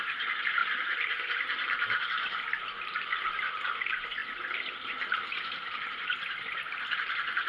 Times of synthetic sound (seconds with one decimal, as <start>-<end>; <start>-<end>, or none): 0.0-4.2; 4.8-7.5